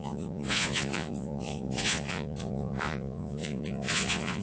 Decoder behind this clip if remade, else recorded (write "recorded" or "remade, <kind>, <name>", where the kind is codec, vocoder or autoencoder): remade, vocoder, Vocos